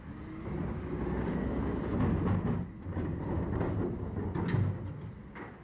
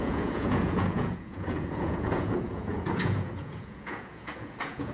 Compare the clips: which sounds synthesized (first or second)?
second